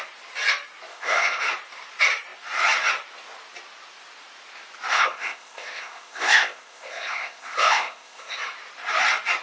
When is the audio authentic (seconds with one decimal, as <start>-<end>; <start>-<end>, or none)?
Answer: 0.0-0.9; 1.4-4.9; 8.4-9.4